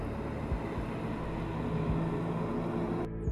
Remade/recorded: recorded